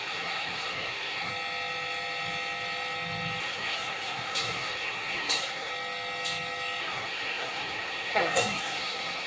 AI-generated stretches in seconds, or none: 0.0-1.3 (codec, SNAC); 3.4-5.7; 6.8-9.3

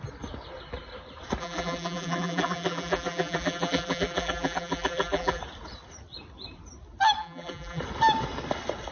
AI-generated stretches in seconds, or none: 1.4-5.4 (vocoder, BigVGAN v2); 7.2-7.8

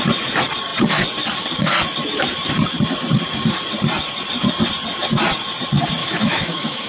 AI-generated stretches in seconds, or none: 6.0-6.9 (autoencoder, DAC-VAE)

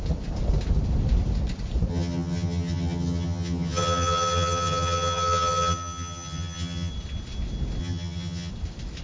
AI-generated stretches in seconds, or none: 1.9-6.9 (vocoder, HiFi-GAN); 7.8-8.5

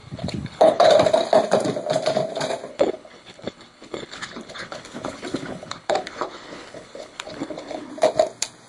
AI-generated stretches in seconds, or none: 0.0-0.9 (codec, HILCodec); 2.7-7.9

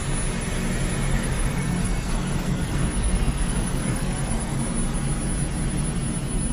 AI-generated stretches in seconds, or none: 1.1-4.6 (codec, SNAC)

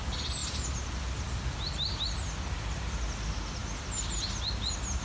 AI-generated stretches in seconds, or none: none

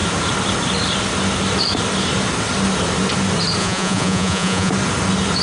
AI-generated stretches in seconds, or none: 3.6-4.7 (vocoder, Vocos)